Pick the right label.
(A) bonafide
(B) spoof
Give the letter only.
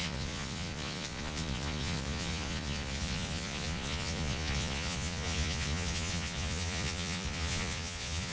B